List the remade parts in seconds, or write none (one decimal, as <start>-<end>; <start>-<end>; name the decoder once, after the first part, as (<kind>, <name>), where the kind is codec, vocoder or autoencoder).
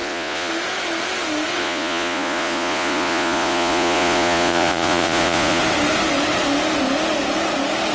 0.0-0.5 (vocoder, Vocos); 1.6-5.6